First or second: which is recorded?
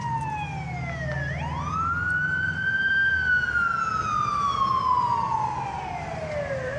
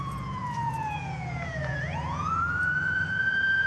first